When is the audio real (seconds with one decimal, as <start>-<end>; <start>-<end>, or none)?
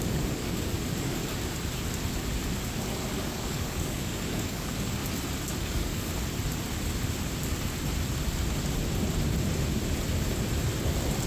1.2-3.1; 5.0-5.6; 6.1-11.3